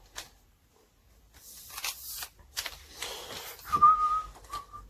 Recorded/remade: recorded